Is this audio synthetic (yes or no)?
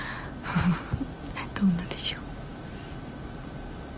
no